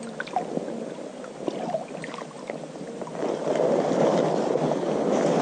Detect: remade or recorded recorded